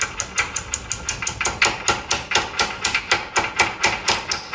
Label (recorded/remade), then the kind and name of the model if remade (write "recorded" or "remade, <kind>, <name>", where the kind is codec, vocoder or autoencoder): recorded